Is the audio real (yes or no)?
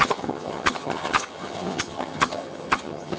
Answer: no